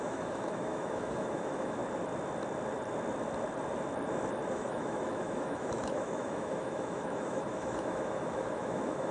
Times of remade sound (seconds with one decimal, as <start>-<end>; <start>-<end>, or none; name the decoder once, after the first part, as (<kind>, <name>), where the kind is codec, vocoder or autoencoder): 0.0-1.8 (autoencoder, DAC-VAE); 4.5-9.1